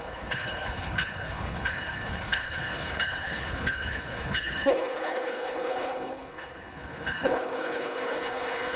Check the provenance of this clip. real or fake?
fake